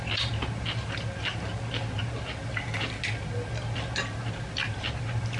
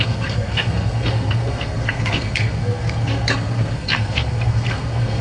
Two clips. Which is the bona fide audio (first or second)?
first